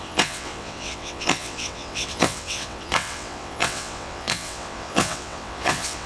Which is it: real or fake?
fake